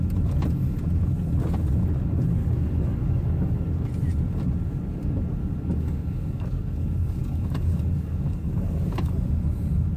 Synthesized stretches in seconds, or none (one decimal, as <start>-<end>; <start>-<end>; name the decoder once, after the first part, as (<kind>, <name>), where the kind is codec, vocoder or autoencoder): 2.4-3.7 (codec, DAC); 5.4-9.1